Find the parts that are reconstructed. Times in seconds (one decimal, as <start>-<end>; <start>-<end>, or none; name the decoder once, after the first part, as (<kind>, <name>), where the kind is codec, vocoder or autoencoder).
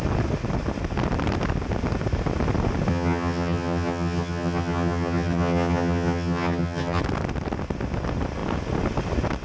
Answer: 2.9-7.0 (vocoder, HiFi-GAN)